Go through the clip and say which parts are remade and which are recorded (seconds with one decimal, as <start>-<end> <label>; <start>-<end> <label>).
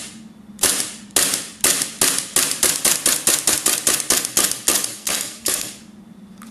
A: 0.0-4.9 recorded; 4.9-5.7 remade; 5.7-6.5 recorded